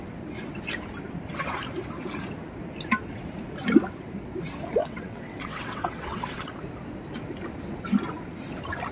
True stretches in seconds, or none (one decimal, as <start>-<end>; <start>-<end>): 0.0-4.8; 6.5-8.9

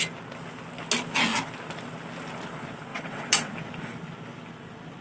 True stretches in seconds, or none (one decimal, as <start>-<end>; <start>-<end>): 0.0-2.9; 3.5-5.0

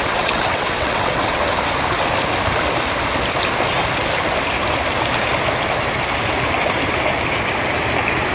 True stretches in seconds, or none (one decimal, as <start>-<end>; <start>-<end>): 1.4-8.3

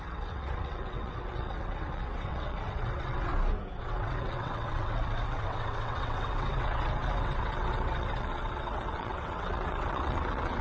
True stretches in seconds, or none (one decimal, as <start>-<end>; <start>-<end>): 3.3-3.8

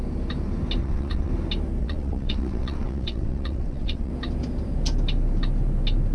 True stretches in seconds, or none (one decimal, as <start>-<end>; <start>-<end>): 0.0-0.8; 1.3-1.8; 4.1-6.1

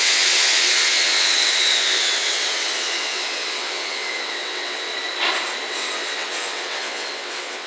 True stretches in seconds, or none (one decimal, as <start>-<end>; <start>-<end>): 4.9-5.7

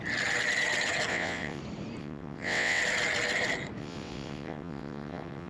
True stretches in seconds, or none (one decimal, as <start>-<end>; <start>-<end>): 0.0-1.1; 1.6-2.0; 2.8-3.8